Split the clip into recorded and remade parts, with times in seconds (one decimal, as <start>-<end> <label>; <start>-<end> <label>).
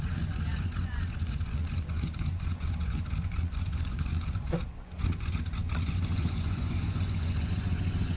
0.0-8.2 remade